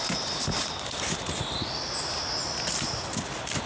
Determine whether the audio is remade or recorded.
recorded